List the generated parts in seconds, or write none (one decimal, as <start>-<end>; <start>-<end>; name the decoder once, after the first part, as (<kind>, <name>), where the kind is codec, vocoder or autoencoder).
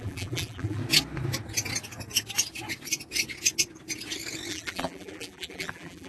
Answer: 0.0-0.8 (vocoder, BigVGAN v2); 4.5-6.1